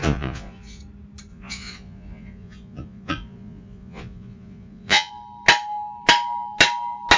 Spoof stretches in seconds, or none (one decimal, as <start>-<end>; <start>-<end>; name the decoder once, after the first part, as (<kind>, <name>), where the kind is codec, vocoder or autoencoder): 0.0-0.8 (vocoder, Vocos); 1.3-5.1